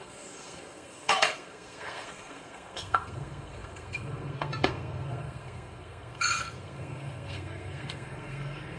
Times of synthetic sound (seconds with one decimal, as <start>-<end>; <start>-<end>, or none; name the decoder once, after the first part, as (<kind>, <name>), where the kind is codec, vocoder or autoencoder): 0.0-8.8 (codec, SNAC)